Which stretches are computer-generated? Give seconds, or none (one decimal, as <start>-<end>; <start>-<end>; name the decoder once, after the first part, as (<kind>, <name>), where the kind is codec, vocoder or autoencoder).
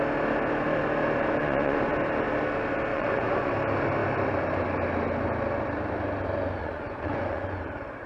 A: 1.4-1.9 (vocoder, Vocos); 2.9-3.5; 6.6-7.6